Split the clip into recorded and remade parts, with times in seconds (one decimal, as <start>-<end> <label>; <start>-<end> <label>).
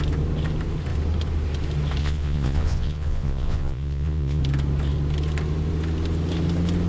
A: 0.0-2.0 recorded; 2.0-4.4 remade; 4.4-6.9 recorded